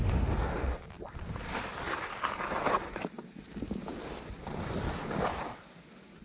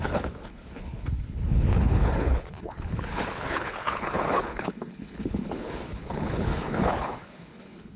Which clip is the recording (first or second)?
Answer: first